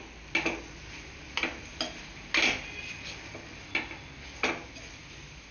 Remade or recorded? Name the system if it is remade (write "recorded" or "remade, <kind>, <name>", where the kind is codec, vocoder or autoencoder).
recorded